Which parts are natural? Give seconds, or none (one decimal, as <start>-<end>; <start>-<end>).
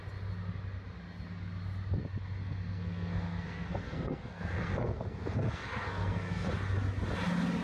0.0-2.4; 6.5-7.6